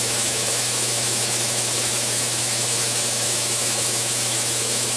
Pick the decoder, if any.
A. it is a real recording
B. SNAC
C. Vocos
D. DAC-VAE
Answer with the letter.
D